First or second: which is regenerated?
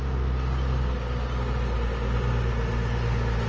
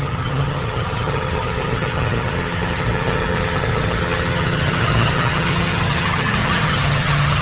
second